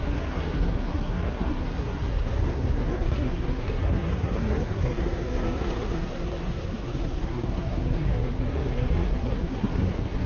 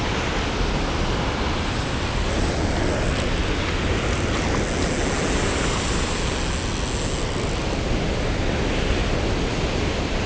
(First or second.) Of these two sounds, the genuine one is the second